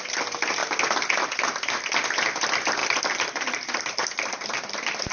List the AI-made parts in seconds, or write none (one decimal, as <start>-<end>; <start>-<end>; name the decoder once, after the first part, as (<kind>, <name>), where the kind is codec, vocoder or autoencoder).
none